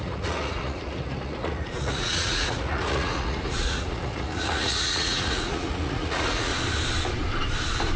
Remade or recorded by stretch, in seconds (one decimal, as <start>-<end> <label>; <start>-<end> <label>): 0.0-6.5 remade; 6.5-8.0 recorded

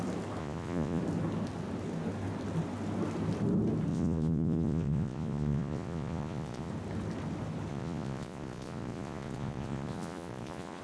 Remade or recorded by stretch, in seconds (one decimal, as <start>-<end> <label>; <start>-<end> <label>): 0.0-0.4 recorded; 0.4-1.0 remade; 1.0-3.9 recorded; 3.9-6.7 remade; 6.7-7.7 recorded; 7.7-10.8 remade

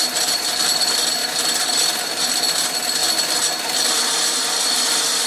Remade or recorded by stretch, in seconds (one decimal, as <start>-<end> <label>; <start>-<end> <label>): 0.0-1.2 recorded; 1.2-2.2 remade; 2.2-5.3 recorded